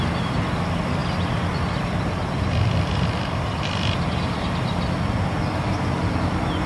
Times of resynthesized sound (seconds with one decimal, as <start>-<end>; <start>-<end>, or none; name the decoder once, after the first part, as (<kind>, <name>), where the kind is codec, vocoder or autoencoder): none